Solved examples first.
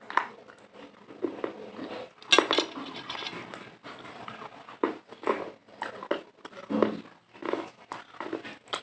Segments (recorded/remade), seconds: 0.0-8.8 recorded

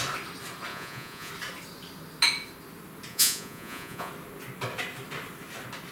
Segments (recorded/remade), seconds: 0.0-0.7 recorded; 0.7-1.3 remade; 1.3-3.1 recorded; 3.1-4.1 remade; 4.1-5.9 recorded

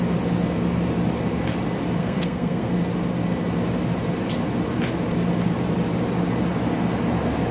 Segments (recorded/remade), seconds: 0.0-2.0 recorded; 2.0-2.7 remade; 2.7-7.5 recorded

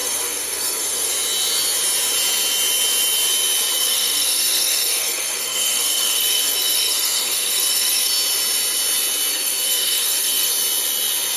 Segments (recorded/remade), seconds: 0.0-1.1 remade; 1.1-3.8 recorded; 3.8-8.1 remade; 8.1-9.3 recorded; 9.3-10.5 remade; 10.5-11.4 recorded

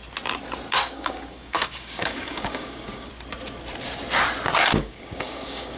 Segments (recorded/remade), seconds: 0.0-0.7 recorded; 0.7-3.1 remade; 3.1-4.7 recorded; 4.7-5.8 remade

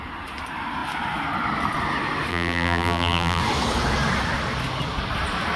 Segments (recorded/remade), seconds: 0.0-2.3 recorded; 2.3-3.4 remade; 3.4-5.6 recorded

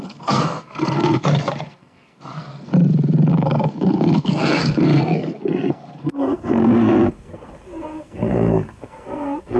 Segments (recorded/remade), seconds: 0.0-2.7 remade; 2.7-3.3 recorded; 3.3-9.6 remade